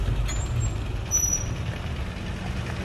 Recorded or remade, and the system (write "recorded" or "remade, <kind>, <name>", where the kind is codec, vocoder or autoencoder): recorded